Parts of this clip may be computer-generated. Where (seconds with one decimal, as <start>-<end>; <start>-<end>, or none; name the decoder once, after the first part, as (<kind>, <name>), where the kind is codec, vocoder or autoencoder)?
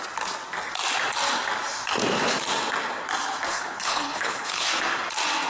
3.5-4.7 (codec, HILCodec)